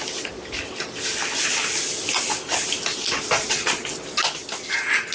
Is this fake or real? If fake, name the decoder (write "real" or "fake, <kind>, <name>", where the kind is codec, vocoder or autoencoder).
real